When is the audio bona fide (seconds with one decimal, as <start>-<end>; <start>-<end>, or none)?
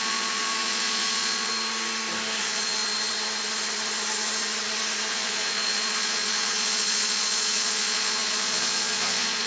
1.5-2.4; 2.8-5.1